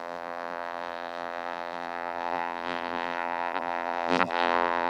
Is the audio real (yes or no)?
no